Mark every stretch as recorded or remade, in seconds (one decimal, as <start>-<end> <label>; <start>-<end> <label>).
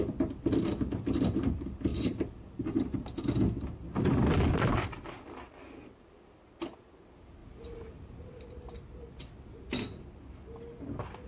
0.0-7.4 recorded; 7.4-10.2 remade; 10.2-11.3 recorded